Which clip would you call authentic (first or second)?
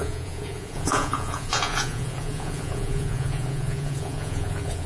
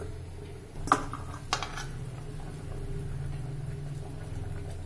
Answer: second